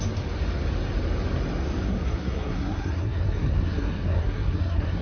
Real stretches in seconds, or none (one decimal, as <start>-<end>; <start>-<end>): 0.0-1.9